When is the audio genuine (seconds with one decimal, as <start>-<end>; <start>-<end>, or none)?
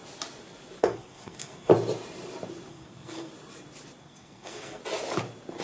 0.0-0.8; 1.7-2.7; 3.3-4.0; 4.8-5.6